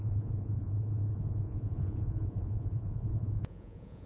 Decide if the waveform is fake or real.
fake